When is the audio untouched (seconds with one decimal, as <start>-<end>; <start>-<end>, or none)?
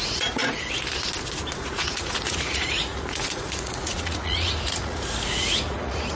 0.4-1.6